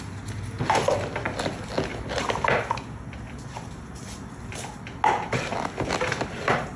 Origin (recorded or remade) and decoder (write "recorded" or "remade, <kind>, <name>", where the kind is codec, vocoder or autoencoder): recorded